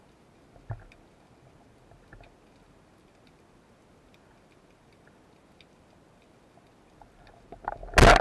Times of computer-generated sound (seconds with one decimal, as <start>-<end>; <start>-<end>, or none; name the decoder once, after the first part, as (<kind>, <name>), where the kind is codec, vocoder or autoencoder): none